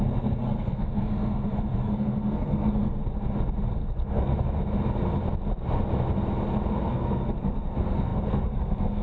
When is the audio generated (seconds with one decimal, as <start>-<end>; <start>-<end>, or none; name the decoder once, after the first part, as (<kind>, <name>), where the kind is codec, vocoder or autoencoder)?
0.0-3.0 (codec, SNAC); 3.7-4.3; 6.8-9.0